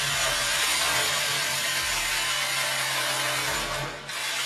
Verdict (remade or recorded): recorded